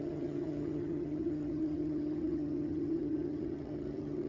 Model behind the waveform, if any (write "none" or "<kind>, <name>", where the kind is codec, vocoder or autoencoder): vocoder, HiFi-GAN